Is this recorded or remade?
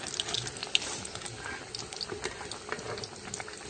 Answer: recorded